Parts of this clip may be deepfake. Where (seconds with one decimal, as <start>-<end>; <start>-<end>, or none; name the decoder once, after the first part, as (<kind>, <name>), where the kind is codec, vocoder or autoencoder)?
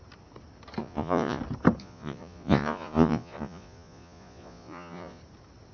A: 0.8-1.4 (vocoder, Vocos); 1.8-5.2